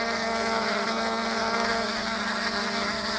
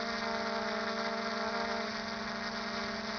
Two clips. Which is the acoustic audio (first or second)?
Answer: second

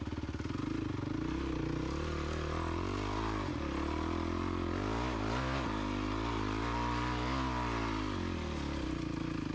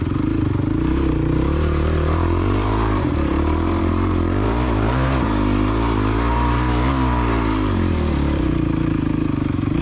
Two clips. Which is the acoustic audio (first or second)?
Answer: first